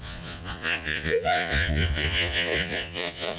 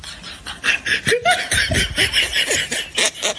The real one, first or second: second